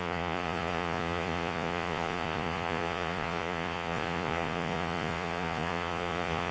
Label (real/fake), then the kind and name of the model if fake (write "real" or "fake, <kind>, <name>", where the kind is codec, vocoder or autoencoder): fake, vocoder, Vocos